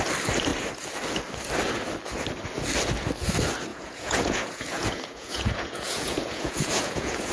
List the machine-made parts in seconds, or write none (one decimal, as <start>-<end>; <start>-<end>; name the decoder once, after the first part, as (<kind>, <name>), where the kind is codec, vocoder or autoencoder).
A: 3.7-7.3 (vocoder, Vocos)